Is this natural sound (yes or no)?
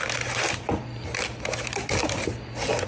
yes